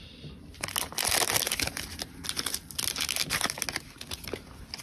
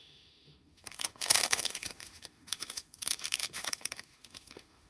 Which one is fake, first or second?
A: second